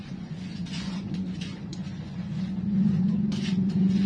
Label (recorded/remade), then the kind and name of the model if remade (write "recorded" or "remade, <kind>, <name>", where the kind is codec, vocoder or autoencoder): remade, vocoder, Vocos